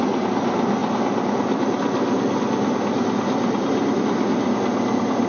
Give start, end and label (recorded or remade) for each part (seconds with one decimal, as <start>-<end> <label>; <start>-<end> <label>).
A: 0.0-5.3 recorded